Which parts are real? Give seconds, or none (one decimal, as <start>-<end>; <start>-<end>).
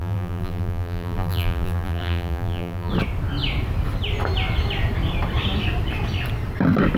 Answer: 2.9-7.0